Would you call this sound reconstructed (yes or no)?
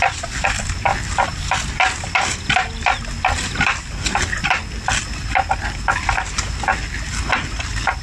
no